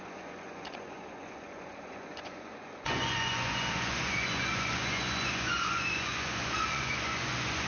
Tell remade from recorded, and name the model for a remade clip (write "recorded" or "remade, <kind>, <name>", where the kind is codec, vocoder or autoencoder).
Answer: remade, vocoder, Vocos